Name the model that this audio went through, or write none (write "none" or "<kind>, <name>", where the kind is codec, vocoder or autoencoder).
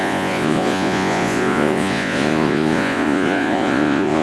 vocoder, Vocos